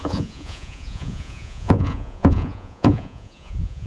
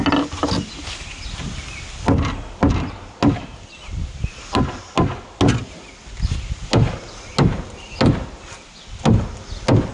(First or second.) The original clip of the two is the second